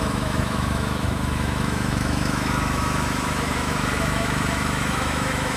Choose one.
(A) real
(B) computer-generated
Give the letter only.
B